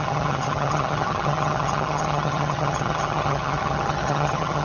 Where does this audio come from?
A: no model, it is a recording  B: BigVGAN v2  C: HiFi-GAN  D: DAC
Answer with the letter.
C